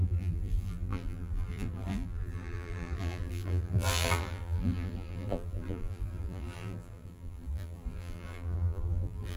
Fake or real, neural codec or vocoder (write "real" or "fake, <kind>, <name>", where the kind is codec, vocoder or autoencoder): fake, vocoder, BigVGAN v2